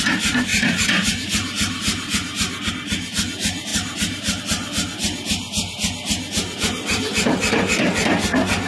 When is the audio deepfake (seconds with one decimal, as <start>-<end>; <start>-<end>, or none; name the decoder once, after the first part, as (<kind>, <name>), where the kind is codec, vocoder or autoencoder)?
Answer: 0.5-2.7 (vocoder, BigVGAN v2); 3.7-4.4; 6.9-8.1

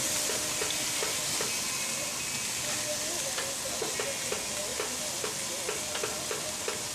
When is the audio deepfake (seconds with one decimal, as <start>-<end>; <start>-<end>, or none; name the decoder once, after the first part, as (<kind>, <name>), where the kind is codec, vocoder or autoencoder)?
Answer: none

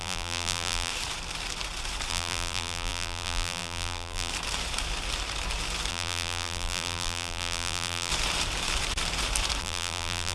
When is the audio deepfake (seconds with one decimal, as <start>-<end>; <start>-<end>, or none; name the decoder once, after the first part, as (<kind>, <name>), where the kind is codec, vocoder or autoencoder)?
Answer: 0.0-0.9 (vocoder, BigVGAN v2); 2.1-4.3; 5.9-8.1; 9.6-10.3

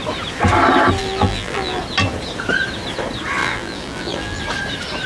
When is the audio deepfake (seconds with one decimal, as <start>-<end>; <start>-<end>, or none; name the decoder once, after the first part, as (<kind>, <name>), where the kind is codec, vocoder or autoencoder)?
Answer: 1.0-1.8 (vocoder, BigVGAN v2); 3.4-4.4

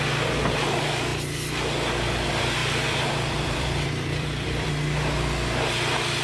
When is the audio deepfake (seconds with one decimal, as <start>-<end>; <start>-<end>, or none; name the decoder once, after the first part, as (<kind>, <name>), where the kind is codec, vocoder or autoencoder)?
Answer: 2.6-4.7 (vocoder, BigVGAN v2)